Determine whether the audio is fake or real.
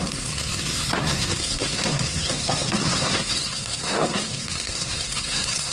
fake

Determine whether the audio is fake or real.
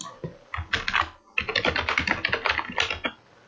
real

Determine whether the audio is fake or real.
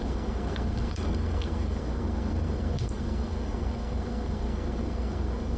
fake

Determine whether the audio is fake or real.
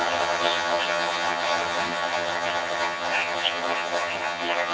fake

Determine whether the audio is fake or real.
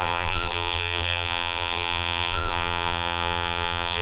fake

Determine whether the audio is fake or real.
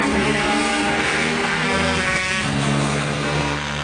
fake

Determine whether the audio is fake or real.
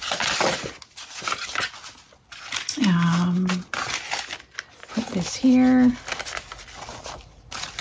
real